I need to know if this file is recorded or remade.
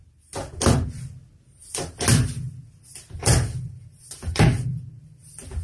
recorded